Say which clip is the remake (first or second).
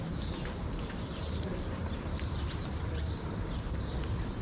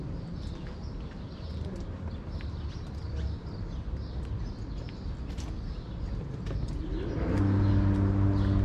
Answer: first